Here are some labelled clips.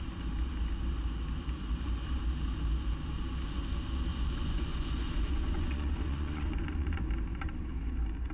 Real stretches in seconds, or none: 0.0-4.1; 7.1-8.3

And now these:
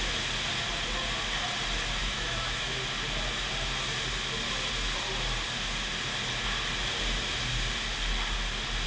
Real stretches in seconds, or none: 0.0-2.0; 2.8-8.9

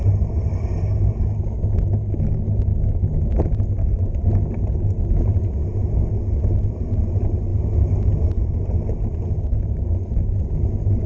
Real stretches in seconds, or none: 0.0-11.1